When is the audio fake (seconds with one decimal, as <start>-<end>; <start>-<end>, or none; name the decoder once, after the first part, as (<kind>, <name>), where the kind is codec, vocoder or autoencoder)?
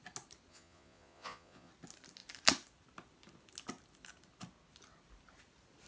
0.5-1.7 (vocoder, Vocos)